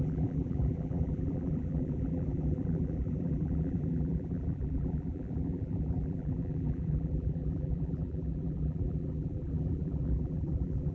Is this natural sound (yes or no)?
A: no